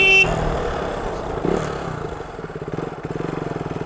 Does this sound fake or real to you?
real